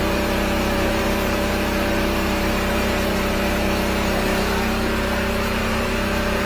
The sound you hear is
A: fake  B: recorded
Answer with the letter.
A